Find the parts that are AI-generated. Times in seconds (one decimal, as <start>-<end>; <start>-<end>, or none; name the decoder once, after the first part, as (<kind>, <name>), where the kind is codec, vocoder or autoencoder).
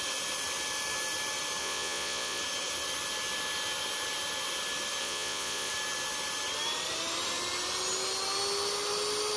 1.6-2.4 (vocoder, Vocos); 5.0-5.7